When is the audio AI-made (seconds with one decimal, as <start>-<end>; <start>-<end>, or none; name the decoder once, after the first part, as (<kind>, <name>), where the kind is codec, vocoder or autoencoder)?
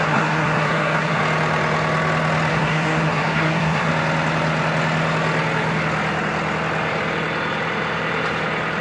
0.0-1.2 (codec, SNAC); 2.5-3.9